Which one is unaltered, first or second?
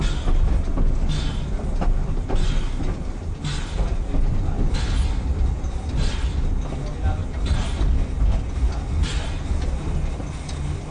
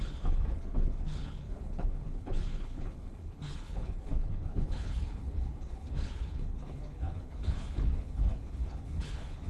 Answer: first